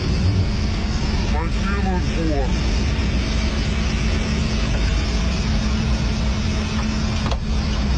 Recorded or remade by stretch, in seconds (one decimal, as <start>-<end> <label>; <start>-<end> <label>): 0.0-0.4 recorded; 0.4-1.0 remade; 1.0-8.0 recorded